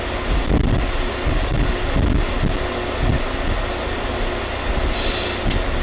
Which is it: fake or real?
real